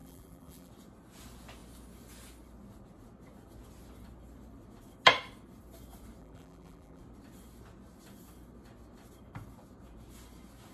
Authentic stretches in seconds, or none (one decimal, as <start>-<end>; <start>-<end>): 0.7-6.2; 7.0-10.7